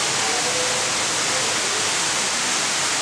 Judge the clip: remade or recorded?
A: recorded